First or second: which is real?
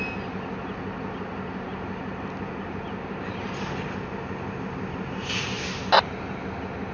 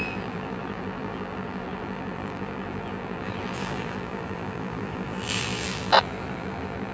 first